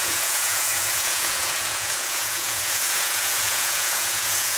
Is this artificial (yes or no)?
yes